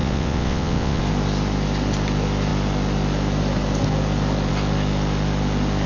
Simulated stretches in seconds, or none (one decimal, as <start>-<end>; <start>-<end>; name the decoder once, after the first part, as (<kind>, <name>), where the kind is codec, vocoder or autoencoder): 0.0-1.0 (vocoder, WaveNeXt)